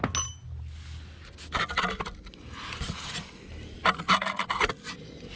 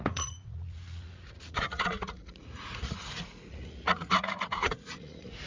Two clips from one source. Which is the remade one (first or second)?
second